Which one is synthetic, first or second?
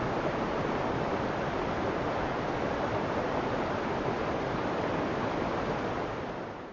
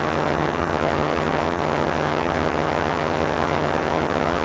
second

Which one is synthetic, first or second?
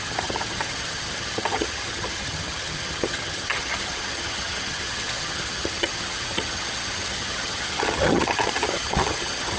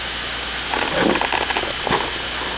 first